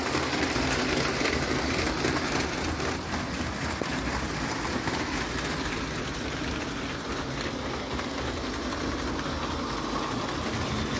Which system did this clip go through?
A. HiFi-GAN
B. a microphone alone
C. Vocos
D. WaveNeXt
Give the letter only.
B